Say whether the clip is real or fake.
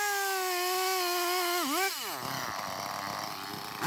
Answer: real